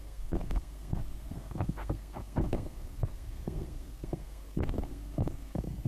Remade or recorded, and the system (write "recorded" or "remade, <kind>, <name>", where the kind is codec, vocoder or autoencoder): remade, codec, SNAC